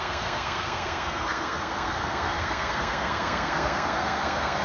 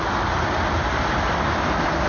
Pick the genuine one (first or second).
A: second